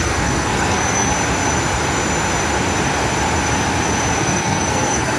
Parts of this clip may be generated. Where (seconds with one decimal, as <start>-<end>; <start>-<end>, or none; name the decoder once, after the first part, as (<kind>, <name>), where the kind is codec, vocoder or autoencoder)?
0.0-1.1 (codec, SNAC); 4.2-5.2